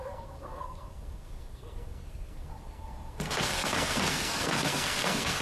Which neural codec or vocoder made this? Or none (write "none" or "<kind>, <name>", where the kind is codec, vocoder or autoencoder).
codec, SNAC